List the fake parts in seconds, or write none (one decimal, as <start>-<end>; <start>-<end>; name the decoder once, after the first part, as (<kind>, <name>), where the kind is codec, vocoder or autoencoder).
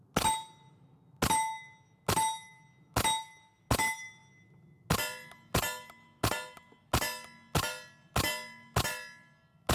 none